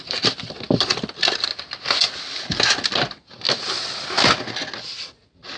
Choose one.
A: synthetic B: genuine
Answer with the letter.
B